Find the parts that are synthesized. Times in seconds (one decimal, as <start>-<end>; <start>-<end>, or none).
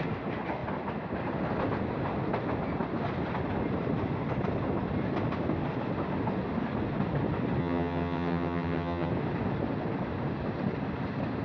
7.6-9.1